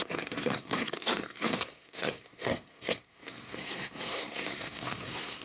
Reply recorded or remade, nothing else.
remade